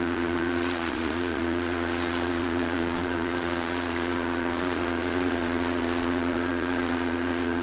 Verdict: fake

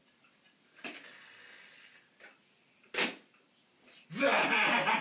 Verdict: real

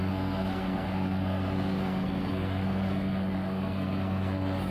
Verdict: fake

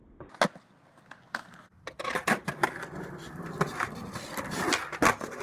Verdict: real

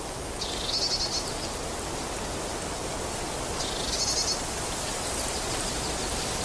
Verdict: real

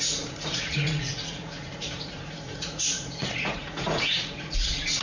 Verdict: fake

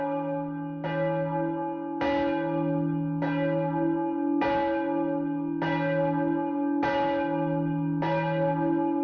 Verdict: real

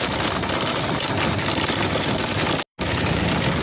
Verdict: real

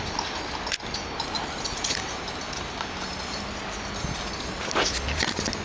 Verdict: real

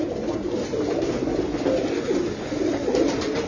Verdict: real